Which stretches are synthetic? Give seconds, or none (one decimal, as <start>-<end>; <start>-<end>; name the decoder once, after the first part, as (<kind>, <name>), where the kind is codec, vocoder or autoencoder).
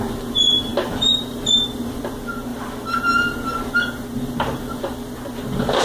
0.7-2.0 (vocoder, BigVGAN v2)